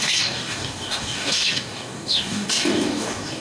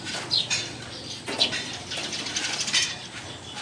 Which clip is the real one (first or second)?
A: second